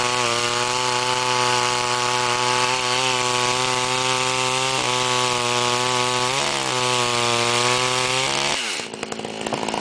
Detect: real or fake real